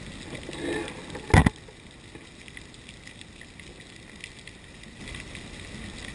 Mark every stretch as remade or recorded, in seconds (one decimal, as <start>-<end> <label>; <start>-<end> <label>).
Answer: 0.0-6.1 recorded